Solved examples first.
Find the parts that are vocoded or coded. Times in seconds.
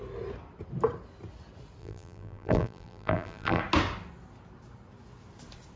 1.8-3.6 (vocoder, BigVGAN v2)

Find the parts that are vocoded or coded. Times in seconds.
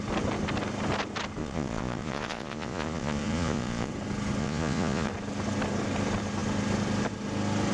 1.4-3.9 (vocoder, Vocos); 4.4-5.1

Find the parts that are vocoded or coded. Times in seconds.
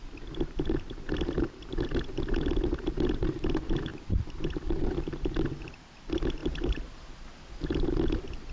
3.9-4.5 (vocoder, BigVGAN v2)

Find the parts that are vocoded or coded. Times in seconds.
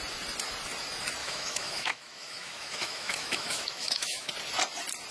1.2-4.3 (autoencoder, DAC-VAE)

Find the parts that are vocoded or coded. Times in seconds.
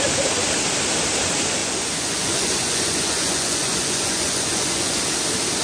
1.6-5.0 (vocoder, Vocos)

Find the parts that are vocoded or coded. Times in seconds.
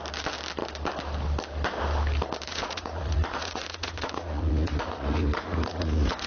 2.5-6.3 (vocoder, Vocos)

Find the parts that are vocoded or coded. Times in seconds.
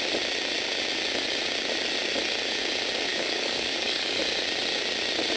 3.1-4.2 (codec, DAC)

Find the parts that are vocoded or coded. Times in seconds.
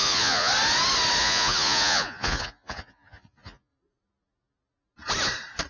0.0-0.5 (vocoder, Vocos); 1.2-3.7